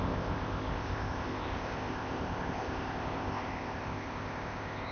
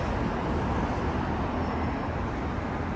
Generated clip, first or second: first